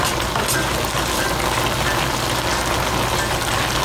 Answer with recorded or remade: recorded